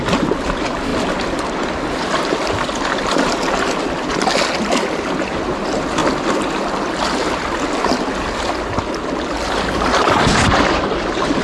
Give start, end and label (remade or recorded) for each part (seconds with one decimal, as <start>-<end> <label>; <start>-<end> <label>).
0.0-11.4 recorded